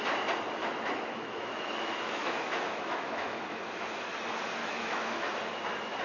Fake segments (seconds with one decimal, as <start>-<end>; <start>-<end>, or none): 0.6-3.6; 4.6-5.3